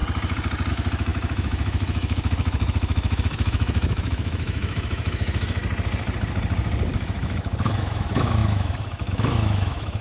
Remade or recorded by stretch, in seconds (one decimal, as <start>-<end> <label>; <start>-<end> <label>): 0.0-0.7 recorded; 0.7-5.6 remade; 5.6-6.9 recorded; 6.9-10.0 remade